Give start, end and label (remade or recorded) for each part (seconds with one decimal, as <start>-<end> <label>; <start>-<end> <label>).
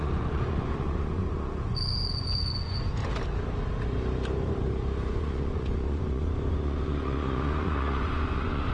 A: 0.0-3.0 remade; 3.0-5.1 recorded; 5.1-8.7 remade